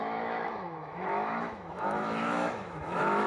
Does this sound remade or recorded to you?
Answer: remade